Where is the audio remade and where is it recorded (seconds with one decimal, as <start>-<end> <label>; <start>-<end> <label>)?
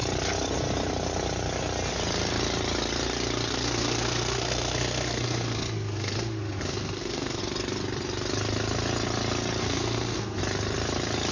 0.0-3.5 recorded; 3.5-7.4 remade; 7.4-9.6 recorded; 9.6-10.4 remade; 10.4-11.3 recorded